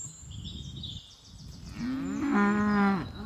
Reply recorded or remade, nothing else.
recorded